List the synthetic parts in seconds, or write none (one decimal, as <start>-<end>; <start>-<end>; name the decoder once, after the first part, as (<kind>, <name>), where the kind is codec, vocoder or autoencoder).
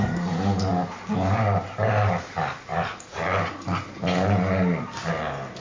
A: none